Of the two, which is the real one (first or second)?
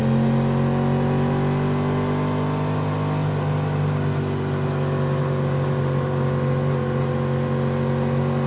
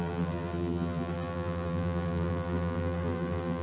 first